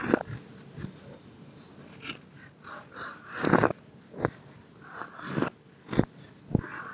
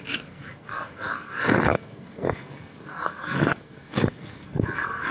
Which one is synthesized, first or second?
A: second